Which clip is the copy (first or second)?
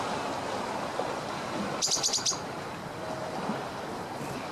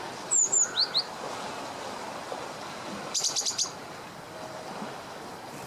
second